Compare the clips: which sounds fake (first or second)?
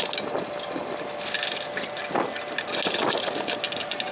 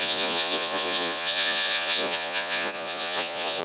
second